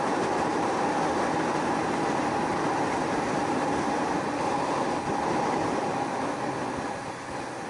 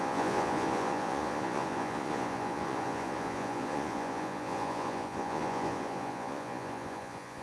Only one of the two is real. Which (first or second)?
first